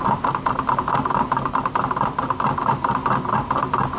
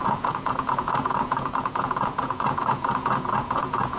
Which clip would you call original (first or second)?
first